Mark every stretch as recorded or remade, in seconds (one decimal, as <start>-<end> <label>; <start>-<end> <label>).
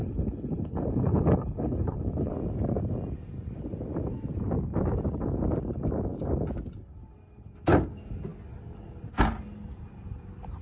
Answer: 0.0-2.3 remade; 2.3-10.6 recorded